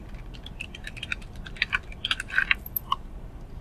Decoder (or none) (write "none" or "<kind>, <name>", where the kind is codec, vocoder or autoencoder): vocoder, BigVGAN v2